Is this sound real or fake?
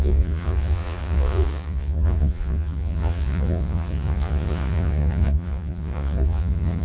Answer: fake